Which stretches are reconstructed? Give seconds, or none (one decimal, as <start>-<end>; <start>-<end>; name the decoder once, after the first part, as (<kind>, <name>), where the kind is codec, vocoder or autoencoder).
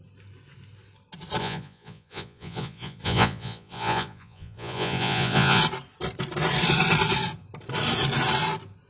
1.4-5.6 (vocoder, Vocos)